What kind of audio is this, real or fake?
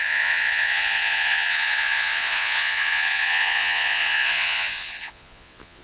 fake